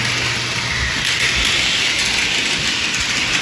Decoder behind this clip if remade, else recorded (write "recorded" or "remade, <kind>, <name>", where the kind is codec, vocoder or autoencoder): recorded